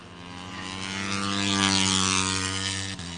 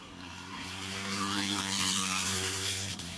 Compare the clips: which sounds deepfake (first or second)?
second